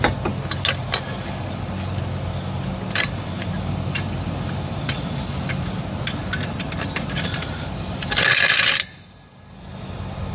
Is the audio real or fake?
real